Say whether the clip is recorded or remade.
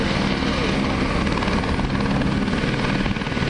recorded